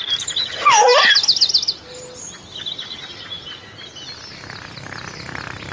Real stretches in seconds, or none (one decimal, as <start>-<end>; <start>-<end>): 0.0-5.7